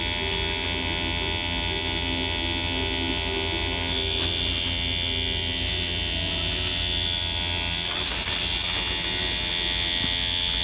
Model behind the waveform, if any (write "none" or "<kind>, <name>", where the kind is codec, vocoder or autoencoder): none